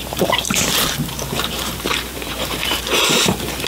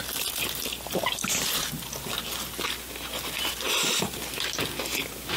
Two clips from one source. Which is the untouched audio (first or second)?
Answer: second